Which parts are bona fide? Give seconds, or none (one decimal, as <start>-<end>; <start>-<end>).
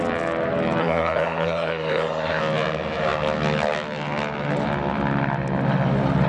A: 0.0-0.8; 2.4-6.3